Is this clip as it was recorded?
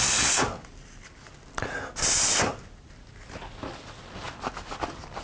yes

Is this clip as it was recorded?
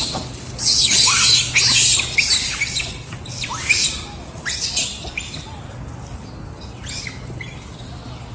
yes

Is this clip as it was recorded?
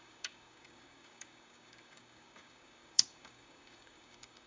no